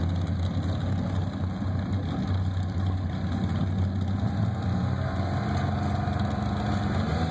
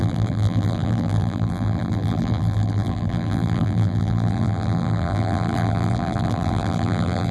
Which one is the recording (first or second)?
first